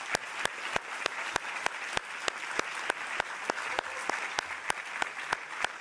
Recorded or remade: recorded